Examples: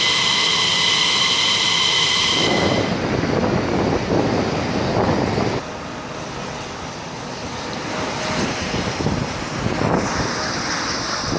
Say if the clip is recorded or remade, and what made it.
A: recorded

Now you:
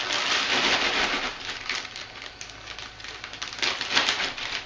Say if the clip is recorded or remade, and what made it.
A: recorded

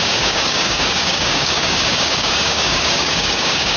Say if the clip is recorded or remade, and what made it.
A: remade, codec, DAC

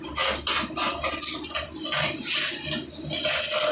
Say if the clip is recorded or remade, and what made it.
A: recorded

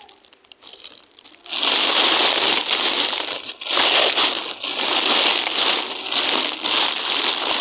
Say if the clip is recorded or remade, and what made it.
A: recorded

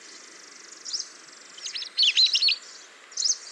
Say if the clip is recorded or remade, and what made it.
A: recorded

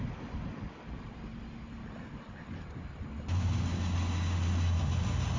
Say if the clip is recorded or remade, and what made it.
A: recorded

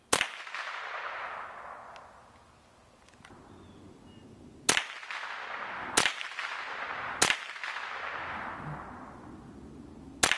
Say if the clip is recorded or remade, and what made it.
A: recorded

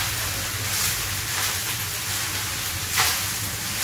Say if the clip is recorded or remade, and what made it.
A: recorded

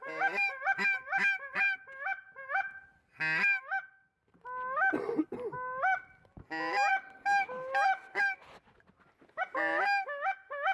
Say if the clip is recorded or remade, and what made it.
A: recorded